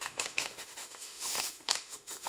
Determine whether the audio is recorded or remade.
remade